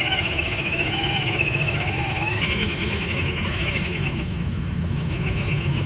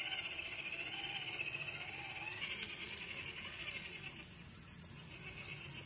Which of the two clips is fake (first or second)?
first